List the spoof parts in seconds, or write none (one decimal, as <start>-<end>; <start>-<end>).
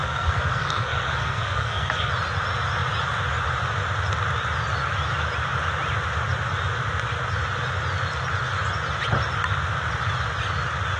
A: 0.0-2.1